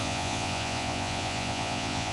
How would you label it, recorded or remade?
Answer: remade